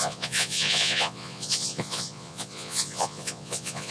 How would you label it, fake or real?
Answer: fake